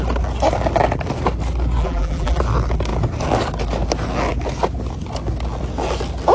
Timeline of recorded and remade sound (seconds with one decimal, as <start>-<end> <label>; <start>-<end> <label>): 0.0-1.8 recorded; 1.8-2.4 remade; 2.4-6.3 recorded